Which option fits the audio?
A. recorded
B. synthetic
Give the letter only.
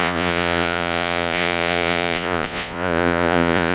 B